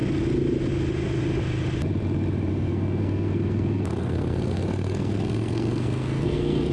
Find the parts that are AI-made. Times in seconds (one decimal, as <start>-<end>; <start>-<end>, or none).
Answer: 2.5-6.7